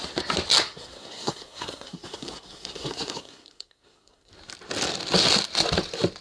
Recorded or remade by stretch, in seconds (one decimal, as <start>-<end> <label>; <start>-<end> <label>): 0.0-0.6 recorded; 0.6-4.3 remade; 4.3-6.2 recorded